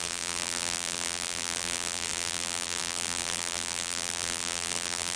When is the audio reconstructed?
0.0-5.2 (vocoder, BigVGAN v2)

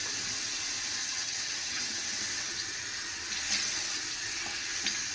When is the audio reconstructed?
1.0-1.8 (vocoder, HiFi-GAN)

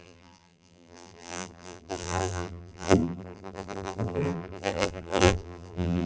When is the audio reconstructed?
0.0-6.1 (vocoder, BigVGAN v2)